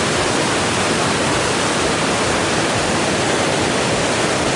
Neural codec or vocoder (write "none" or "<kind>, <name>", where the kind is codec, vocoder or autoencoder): none